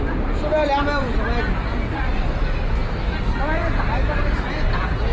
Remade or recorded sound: recorded